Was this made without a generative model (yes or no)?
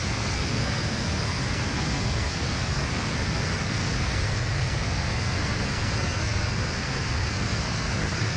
no